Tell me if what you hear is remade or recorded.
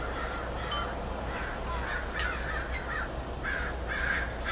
recorded